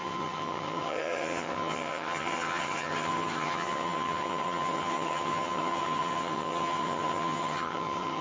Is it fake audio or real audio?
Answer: fake